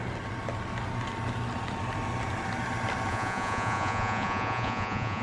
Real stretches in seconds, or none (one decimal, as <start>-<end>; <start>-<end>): 0.0-3.1